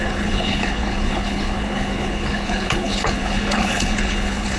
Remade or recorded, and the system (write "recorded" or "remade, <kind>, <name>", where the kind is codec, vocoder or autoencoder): remade, codec, HILCodec